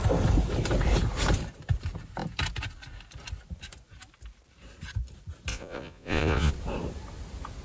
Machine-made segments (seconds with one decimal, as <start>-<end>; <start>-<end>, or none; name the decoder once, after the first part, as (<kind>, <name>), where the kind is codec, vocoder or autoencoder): 5.5-6.5 (vocoder, Vocos)